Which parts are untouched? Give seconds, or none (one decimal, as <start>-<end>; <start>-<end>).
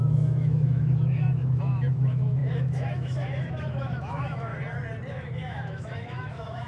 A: 4.5-5.1